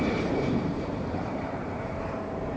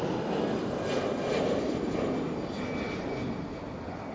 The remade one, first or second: first